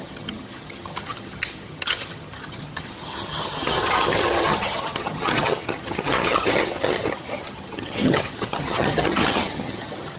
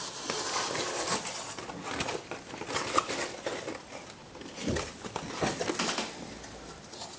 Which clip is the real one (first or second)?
second